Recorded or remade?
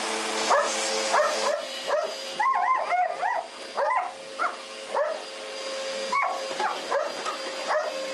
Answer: recorded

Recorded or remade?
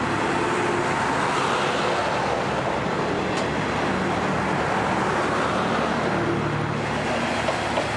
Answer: recorded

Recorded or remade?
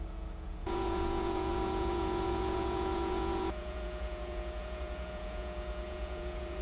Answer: remade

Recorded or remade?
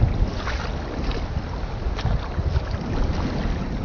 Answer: recorded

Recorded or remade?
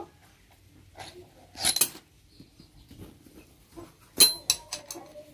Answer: recorded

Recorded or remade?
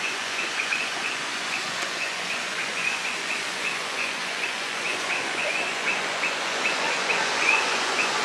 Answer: remade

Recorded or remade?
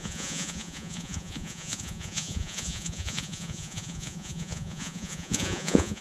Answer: remade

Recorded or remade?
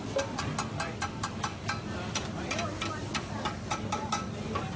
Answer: recorded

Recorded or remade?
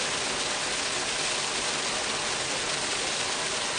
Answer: recorded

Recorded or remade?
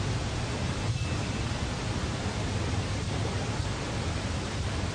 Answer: recorded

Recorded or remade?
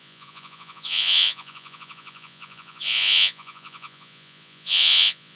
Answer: remade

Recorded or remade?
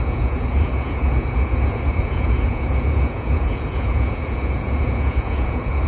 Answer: remade